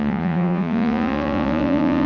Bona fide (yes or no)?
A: no